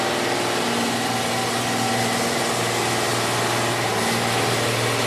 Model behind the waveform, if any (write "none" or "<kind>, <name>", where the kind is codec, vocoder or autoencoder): none